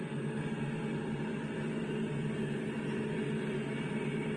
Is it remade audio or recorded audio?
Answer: recorded